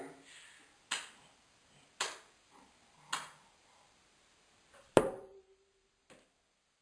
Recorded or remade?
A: recorded